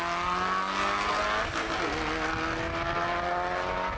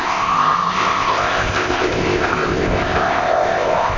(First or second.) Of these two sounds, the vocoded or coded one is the second